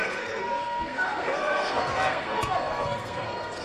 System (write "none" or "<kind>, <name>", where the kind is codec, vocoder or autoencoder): codec, SNAC